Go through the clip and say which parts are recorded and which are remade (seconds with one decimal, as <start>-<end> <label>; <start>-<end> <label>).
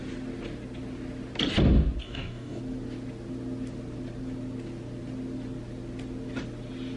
0.0-2.0 recorded; 2.0-2.6 remade; 2.6-7.0 recorded